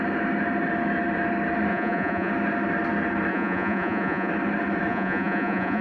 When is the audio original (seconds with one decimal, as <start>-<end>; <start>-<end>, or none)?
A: 0.0-1.7; 2.3-3.3; 4.3-4.9